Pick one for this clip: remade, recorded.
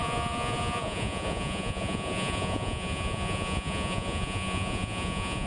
remade